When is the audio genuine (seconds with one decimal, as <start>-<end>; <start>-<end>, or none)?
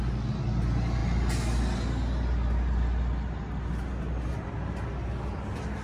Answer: 0.0-5.8